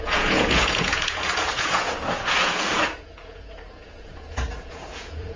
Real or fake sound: fake